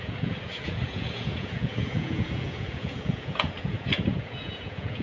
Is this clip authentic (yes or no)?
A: no